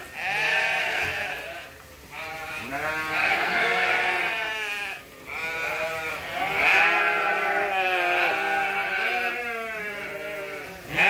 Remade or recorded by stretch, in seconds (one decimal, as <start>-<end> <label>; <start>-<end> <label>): 0.0-0.8 recorded; 0.8-1.3 remade; 1.3-3.2 recorded; 3.2-3.9 remade; 3.9-11.1 recorded